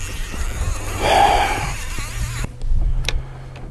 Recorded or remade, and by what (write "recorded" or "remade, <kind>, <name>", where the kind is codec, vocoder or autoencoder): recorded